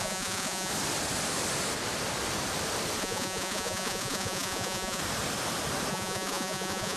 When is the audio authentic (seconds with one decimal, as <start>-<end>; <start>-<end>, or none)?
0.7-3.0; 5.0-5.9

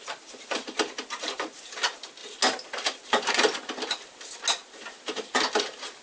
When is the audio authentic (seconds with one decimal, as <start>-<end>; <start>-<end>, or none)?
0.0-6.0